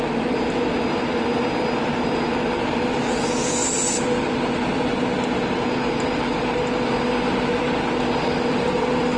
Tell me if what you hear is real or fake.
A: real